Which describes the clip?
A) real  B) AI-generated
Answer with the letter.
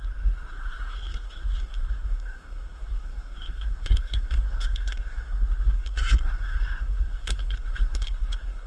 B